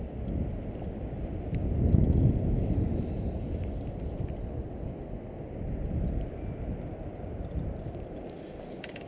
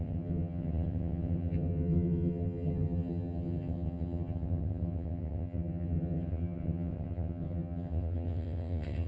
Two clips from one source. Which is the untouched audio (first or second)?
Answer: first